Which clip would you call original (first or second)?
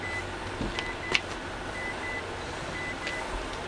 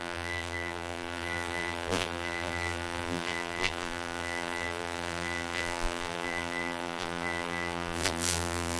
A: first